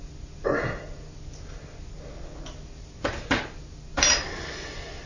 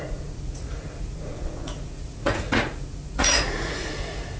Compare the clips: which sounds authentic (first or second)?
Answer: first